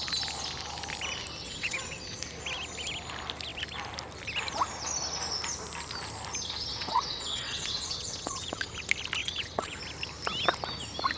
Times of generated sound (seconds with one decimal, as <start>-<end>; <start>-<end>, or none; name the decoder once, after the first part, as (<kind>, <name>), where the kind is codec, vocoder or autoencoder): 1.4-2.2 (vocoder, WaveNeXt); 6.7-8.7; 9.2-9.8